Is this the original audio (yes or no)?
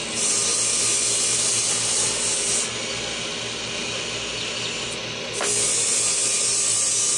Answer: yes